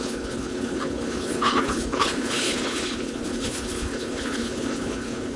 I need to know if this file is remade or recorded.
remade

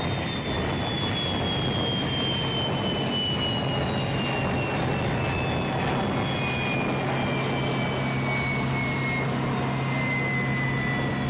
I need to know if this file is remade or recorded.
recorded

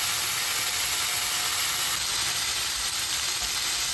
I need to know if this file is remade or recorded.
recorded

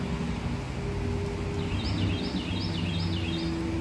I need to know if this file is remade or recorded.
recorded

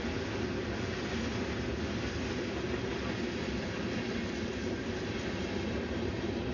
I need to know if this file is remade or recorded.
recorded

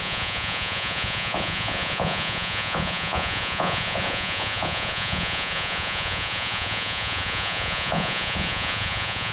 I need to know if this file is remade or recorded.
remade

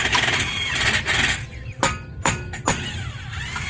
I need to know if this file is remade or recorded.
recorded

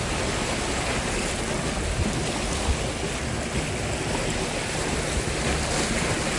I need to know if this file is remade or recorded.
recorded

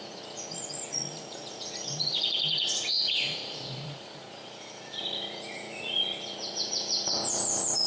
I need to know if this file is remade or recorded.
remade